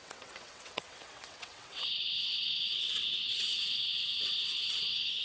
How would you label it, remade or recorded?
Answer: remade